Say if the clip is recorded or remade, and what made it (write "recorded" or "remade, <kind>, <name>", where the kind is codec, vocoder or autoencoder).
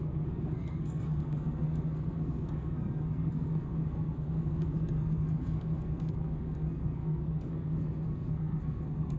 remade, codec, SNAC